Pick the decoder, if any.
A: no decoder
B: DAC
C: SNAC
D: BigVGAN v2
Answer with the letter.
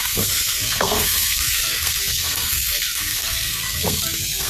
C